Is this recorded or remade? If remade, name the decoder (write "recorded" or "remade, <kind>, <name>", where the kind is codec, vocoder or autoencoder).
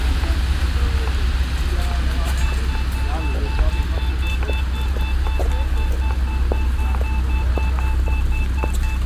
recorded